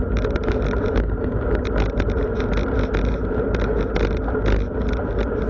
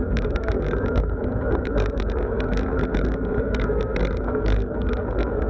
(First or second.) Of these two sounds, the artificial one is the second